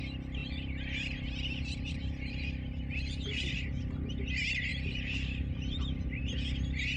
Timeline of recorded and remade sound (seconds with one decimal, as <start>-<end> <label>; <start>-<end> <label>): 0.0-0.4 recorded; 0.4-4.1 remade; 4.1-4.7 recorded; 4.7-6.2 remade; 6.2-7.0 recorded